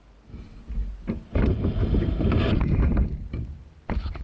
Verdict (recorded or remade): recorded